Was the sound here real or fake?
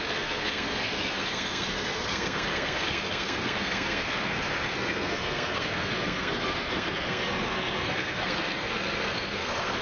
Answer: fake